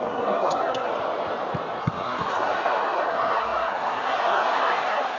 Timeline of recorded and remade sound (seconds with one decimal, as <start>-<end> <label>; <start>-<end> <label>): 0.0-0.9 remade; 0.9-1.8 recorded; 1.8-5.2 remade